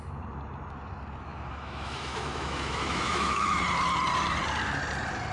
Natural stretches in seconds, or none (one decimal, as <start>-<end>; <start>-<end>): 0.0-1.3; 3.6-5.3